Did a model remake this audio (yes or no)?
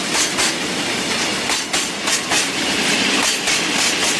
no